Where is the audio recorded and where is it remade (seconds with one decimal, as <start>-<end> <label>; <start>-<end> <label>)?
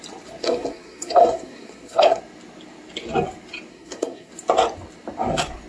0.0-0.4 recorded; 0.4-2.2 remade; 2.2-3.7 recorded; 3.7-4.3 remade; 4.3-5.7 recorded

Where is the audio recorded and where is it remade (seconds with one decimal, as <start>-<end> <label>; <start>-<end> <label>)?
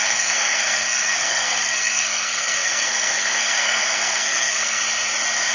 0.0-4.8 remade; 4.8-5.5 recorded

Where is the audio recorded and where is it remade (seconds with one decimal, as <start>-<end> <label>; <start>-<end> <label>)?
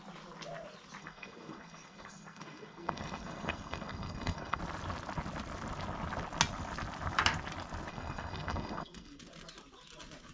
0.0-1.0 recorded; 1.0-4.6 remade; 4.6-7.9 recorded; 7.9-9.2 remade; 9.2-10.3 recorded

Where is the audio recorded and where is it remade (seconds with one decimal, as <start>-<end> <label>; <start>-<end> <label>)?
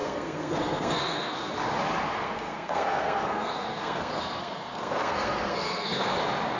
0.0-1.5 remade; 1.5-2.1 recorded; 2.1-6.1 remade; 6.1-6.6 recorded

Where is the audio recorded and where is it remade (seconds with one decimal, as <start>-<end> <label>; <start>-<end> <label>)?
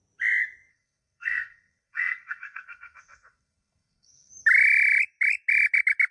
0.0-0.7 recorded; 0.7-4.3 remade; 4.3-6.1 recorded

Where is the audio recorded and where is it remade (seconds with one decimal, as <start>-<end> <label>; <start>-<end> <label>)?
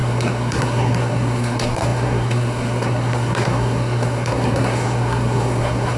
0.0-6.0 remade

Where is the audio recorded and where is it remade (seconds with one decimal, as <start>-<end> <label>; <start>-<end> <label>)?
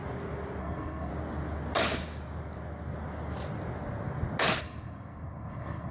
0.0-0.6 recorded; 0.6-1.1 remade; 1.1-4.6 recorded; 4.6-5.9 remade